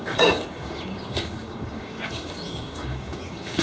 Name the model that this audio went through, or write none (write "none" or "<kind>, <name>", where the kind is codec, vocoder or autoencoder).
codec, DAC